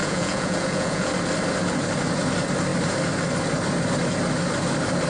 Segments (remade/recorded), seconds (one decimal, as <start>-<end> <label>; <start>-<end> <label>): 0.0-1.1 remade; 1.1-5.1 recorded